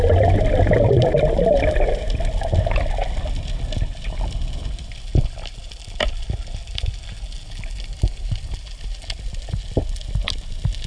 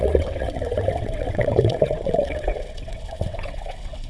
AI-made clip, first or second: second